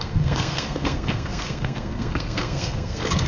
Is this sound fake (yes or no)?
yes